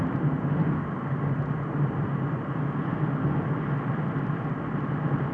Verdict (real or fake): real